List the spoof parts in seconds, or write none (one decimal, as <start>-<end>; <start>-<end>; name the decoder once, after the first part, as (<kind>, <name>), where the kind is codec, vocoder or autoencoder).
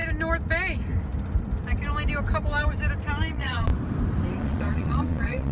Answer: 3.3-3.7 (vocoder, Vocos); 4.4-5.5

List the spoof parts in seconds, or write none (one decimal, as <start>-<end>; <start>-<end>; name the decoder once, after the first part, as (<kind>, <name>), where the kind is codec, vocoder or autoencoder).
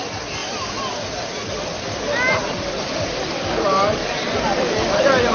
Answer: 4.0-4.8 (vocoder, BigVGAN v2)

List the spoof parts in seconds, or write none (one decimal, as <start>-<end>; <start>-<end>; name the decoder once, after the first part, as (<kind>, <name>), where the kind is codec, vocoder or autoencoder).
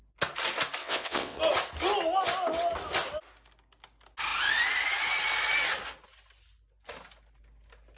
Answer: 0.8-1.4 (vocoder, WaveNeXt)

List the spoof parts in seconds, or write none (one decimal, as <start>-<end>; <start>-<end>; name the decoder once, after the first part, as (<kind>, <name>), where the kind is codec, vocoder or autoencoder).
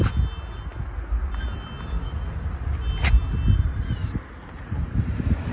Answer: none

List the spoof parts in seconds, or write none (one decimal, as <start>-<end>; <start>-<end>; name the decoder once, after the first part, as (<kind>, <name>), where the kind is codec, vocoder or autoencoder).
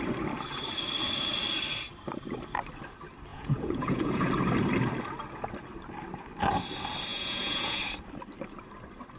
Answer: 3.3-4.3 (vocoder, Vocos); 7.1-7.8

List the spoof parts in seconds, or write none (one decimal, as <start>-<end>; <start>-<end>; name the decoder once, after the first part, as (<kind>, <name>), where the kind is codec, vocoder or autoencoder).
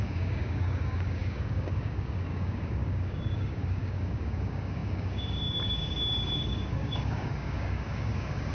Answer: 0.0-8.5 (codec, DAC)